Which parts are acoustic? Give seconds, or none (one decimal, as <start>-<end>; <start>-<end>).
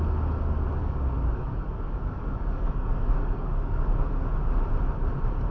0.0-0.8; 4.1-5.5